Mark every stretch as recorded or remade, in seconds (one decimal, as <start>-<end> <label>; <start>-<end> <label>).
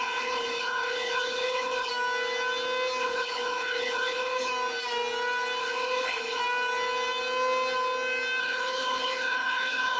0.0-1.9 remade; 1.9-3.0 recorded; 3.0-4.5 remade; 4.5-5.6 recorded; 5.6-6.4 remade; 6.4-8.4 recorded; 8.4-10.0 remade